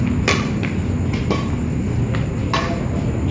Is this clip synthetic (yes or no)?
no